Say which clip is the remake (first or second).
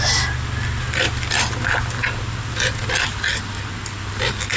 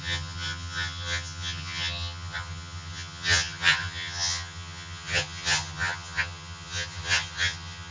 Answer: second